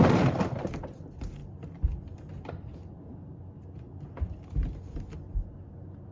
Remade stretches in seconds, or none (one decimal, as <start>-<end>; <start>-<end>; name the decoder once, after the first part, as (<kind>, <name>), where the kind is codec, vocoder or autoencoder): none